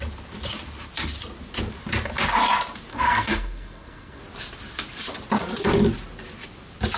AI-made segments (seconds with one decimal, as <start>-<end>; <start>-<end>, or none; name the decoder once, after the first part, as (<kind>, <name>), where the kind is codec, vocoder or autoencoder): 2.9-4.2 (codec, SNAC)